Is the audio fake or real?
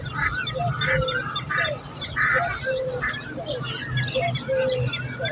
real